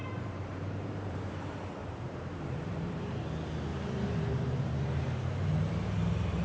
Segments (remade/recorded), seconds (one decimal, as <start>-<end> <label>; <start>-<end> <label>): 0.0-1.3 remade; 1.3-1.8 recorded; 1.8-3.0 remade; 3.0-3.7 recorded; 3.7-4.7 remade; 4.7-6.4 recorded